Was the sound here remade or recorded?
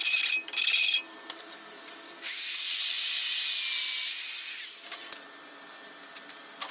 recorded